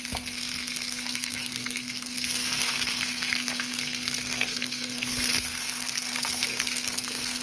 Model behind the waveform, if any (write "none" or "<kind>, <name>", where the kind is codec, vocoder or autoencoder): codec, SNAC